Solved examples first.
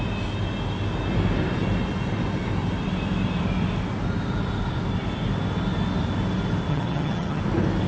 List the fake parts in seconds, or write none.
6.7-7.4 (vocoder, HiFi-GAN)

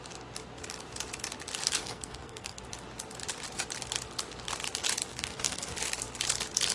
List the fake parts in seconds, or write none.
1.8-2.6 (codec, SNAC); 5.1-5.7

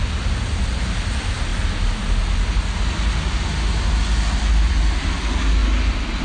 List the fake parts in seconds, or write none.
none

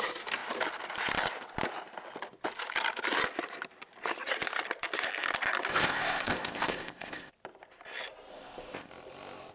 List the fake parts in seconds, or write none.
5.7-7.3 (codec, ZipCodec); 8.3-8.9

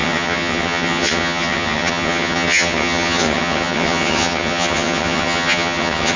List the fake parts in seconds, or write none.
0.0-6.2 (vocoder, HiFi-GAN)

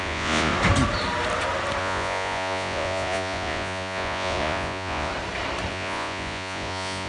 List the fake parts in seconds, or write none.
0.0-0.5 (vocoder, Vocos); 1.8-5.1; 5.7-7.1

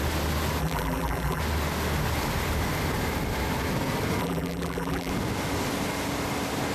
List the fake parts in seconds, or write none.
0.6-1.4 (vocoder, BigVGAN v2); 4.2-5.1